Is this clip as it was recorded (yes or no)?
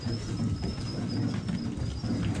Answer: yes